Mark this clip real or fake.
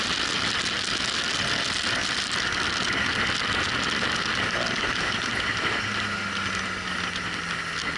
real